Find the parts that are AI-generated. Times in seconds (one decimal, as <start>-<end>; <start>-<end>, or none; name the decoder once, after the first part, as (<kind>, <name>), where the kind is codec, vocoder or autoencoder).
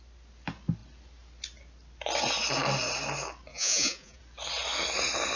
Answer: 3.5-4.2 (vocoder, Vocos)